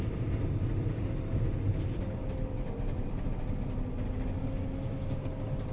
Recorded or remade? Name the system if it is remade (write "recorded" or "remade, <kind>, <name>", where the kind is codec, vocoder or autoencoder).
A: recorded